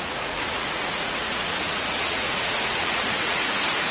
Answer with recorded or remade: remade